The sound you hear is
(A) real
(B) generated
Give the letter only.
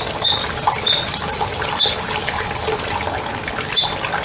A